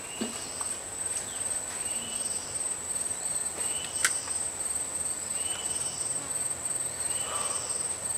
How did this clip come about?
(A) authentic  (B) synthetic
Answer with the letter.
A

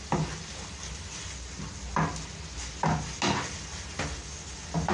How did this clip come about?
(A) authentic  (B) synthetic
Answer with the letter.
A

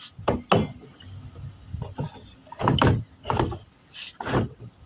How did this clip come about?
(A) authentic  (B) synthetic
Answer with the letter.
A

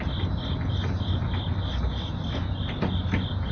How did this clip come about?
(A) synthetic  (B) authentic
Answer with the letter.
B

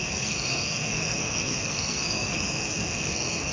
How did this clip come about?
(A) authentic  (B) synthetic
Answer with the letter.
B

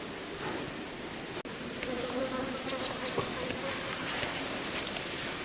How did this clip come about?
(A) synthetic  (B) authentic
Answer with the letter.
B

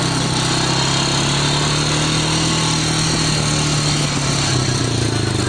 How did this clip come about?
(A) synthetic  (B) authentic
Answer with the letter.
B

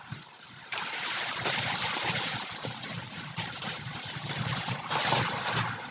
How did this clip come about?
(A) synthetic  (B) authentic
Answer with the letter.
A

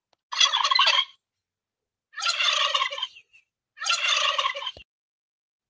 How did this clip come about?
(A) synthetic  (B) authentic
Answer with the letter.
B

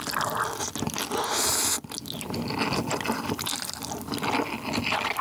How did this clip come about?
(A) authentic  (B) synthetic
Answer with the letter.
A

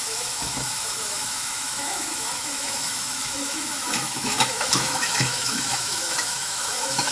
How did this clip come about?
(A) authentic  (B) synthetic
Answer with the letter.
B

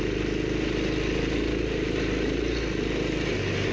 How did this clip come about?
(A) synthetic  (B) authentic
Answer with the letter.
B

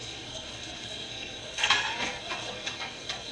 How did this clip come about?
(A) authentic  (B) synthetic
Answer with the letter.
B